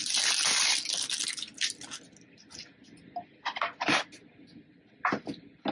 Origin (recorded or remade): recorded